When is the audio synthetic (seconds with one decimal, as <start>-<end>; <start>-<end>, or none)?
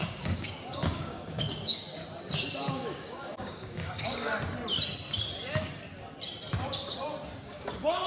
0.0-2.0; 2.7-4.3; 7.5-8.1